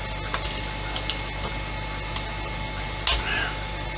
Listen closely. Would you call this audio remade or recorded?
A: recorded